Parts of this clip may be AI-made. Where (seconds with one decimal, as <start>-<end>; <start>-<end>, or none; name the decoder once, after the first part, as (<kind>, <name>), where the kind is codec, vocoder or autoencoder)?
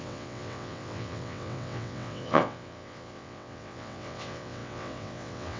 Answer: 0.0-5.6 (vocoder, WaveNeXt)